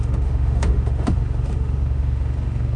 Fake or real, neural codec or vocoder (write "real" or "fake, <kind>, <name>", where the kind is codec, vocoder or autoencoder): fake, autoencoder, DAC-VAE